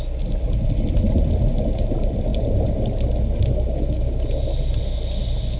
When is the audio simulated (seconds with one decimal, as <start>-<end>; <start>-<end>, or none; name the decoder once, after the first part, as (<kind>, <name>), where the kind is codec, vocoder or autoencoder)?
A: none